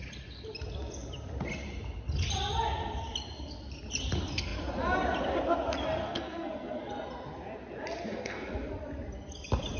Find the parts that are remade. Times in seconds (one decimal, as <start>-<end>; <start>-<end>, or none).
6.0-6.8; 8.1-8.7